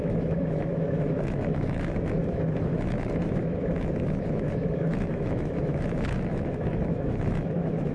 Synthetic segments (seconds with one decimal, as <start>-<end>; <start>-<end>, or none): 0.0-7.9